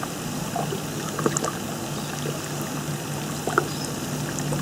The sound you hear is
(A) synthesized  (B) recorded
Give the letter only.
B